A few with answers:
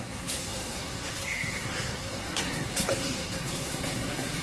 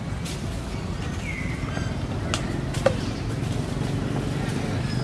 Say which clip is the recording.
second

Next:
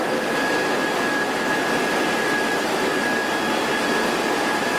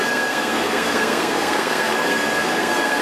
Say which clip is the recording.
first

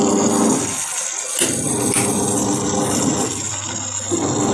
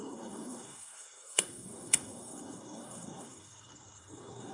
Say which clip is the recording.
first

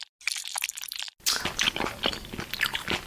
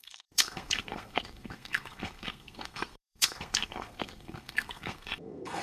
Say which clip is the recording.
first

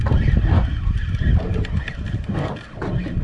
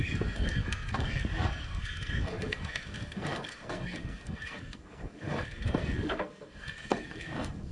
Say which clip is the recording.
first